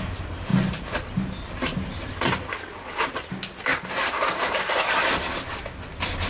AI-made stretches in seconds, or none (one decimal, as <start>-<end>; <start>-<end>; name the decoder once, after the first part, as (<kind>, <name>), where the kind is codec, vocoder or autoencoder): 3.7-4.6 (vocoder, BigVGAN v2)